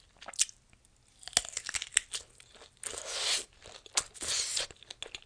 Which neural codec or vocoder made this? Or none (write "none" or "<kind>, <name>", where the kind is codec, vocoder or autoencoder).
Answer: none